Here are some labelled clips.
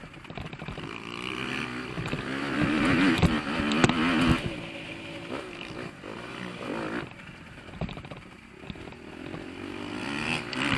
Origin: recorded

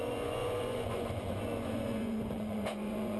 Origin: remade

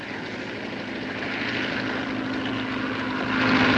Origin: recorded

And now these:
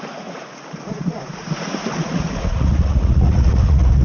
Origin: remade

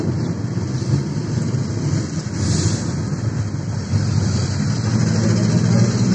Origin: recorded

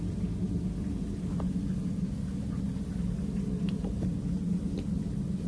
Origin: recorded